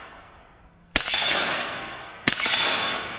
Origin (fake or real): fake